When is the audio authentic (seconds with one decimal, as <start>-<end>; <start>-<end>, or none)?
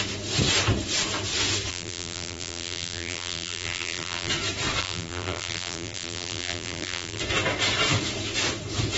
0.0-1.7; 4.3-4.8; 7.2-9.0